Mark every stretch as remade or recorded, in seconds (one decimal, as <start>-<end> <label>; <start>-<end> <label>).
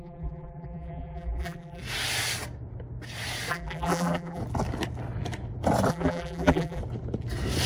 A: 0.0-1.8 remade; 1.8-3.5 recorded; 3.5-4.4 remade; 4.4-5.9 recorded; 5.9-6.8 remade; 6.8-7.7 recorded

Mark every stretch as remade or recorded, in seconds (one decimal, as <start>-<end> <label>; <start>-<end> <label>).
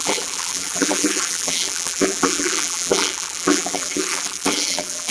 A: 0.0-5.1 remade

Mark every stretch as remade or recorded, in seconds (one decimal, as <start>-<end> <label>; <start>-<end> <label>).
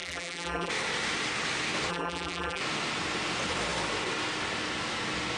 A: 0.0-0.7 remade; 0.7-1.9 recorded; 1.9-2.6 remade; 2.6-5.4 recorded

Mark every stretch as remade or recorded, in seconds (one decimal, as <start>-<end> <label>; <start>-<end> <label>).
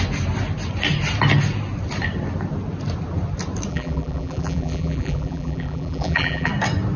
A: 0.0-3.7 recorded; 3.7-6.5 remade; 6.5-7.0 recorded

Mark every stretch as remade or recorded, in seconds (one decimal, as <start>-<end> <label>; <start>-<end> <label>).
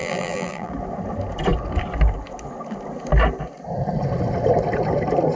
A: 0.0-0.7 remade; 0.7-5.4 recorded